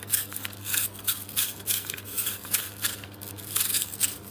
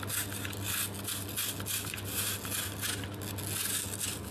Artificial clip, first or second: first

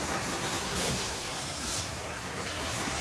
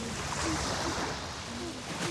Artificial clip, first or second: first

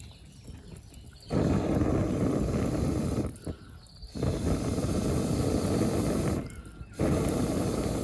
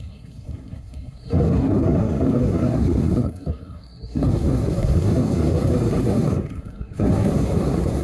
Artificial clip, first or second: second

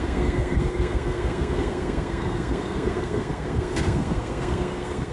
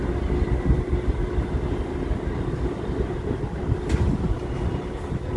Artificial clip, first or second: first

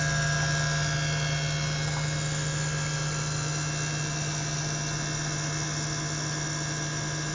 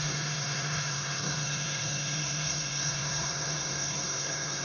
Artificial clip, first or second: second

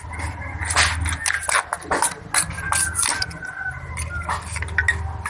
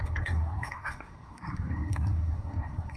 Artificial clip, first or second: second